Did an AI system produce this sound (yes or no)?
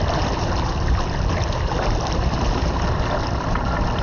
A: no